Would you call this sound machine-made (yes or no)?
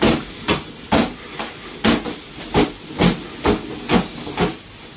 no